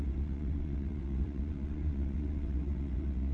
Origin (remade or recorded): remade